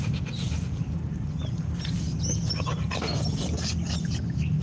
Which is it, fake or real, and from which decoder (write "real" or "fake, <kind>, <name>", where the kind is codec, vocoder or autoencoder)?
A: real